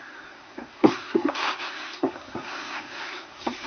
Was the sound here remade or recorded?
remade